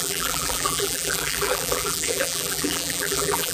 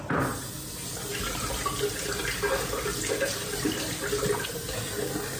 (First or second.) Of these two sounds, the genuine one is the second